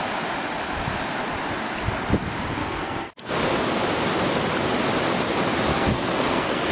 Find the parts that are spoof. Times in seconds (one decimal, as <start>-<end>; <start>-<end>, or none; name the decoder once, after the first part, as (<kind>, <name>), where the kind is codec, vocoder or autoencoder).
2.6-3.3 (codec, SNAC); 5.7-6.7